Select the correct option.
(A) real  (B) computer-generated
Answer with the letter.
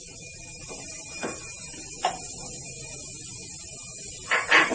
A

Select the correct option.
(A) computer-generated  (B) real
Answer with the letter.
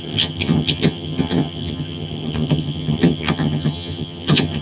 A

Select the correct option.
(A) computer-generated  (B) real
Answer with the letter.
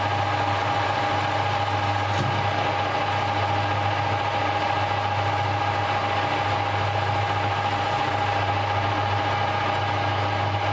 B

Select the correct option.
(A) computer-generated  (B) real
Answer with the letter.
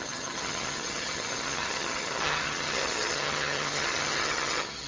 A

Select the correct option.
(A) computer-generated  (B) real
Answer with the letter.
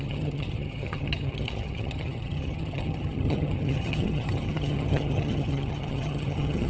A